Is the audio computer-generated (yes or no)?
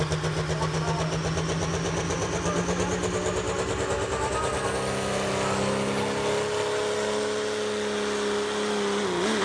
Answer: no